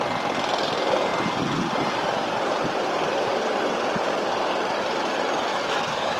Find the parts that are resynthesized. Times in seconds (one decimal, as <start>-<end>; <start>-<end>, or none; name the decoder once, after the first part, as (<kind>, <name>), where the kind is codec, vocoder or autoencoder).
5.5-6.2 (autoencoder, DAC-VAE)